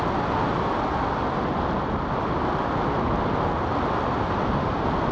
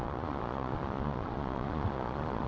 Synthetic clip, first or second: second